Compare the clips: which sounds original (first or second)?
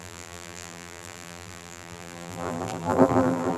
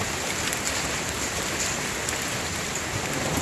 second